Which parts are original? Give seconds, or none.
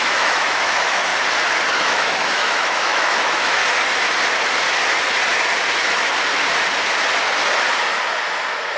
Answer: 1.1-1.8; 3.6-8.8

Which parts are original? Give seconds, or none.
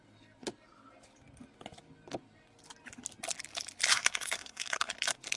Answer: 0.0-3.9; 4.9-5.4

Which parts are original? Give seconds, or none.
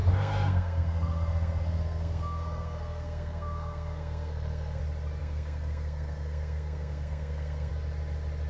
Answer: 4.8-5.2; 7.7-8.5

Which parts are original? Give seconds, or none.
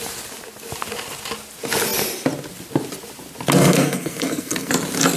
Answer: 0.0-3.6; 4.7-5.2